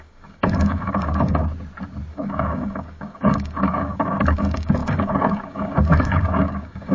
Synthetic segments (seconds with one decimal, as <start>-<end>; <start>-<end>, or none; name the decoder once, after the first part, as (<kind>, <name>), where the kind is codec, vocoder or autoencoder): 0.0-1.4 (codec, DAC); 2.1-6.9